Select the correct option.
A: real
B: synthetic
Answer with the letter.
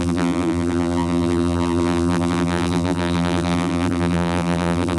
B